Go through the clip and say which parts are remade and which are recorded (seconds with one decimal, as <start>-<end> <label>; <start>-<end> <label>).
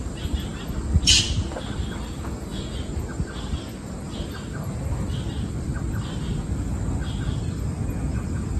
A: 0.0-2.5 recorded; 2.5-3.2 remade; 3.2-8.6 recorded